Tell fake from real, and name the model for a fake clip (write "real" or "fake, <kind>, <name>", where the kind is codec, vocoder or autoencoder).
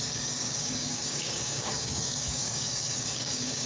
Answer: fake, codec, DAC